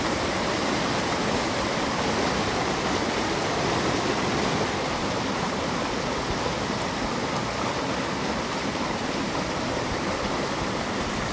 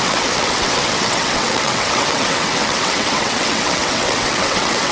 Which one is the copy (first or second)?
second